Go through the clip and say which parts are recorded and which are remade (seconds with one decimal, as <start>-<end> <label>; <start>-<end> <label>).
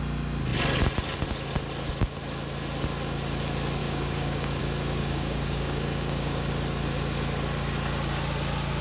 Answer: 0.0-3.8 recorded; 3.8-4.6 remade; 4.6-5.0 recorded; 5.0-6.5 remade; 6.5-8.8 recorded